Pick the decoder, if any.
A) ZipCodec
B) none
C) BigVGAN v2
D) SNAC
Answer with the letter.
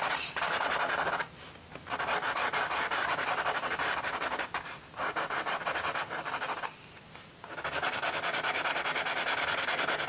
B